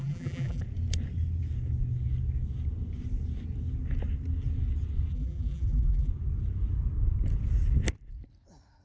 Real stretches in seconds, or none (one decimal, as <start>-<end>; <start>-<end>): 0.6-5.1; 6.1-8.8

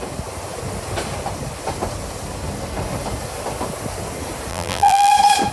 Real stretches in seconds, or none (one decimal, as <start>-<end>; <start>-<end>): 0.0-4.5; 5.1-5.5

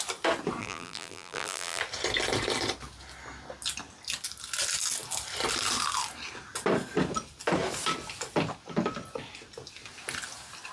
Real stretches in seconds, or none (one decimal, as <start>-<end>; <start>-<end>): 0.0-0.6; 1.8-10.7

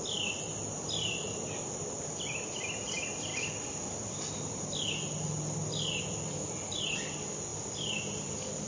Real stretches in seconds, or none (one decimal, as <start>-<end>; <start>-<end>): 0.0-7.5

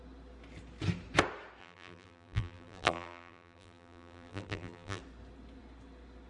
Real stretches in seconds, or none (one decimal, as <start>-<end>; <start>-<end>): 0.0-1.6; 5.0-6.3

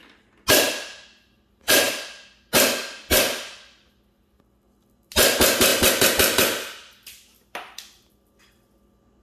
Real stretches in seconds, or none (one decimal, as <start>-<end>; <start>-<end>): 0.0-9.2

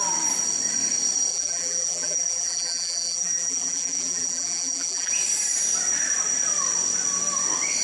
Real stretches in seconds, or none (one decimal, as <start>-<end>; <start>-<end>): 0.0-1.3; 5.1-7.8

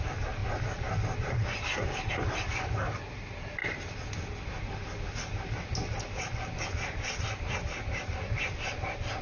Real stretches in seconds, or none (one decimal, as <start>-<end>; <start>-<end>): 0.0-0.4; 2.1-5.8; 6.5-9.2